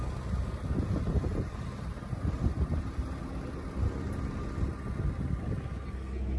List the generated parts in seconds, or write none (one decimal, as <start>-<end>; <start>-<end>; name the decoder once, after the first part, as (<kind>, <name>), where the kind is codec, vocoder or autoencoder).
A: 1.3-3.2 (vocoder, BigVGAN v2)